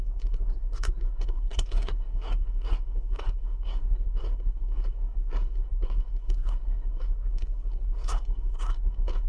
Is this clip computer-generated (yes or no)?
yes